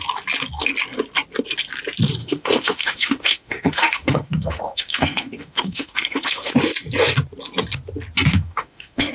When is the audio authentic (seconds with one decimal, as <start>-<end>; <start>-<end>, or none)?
0.0-2.2; 6.5-8.3